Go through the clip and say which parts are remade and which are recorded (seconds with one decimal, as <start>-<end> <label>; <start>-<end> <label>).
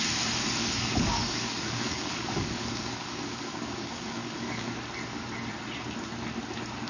0.0-0.6 recorded; 0.6-4.7 remade; 4.7-6.9 recorded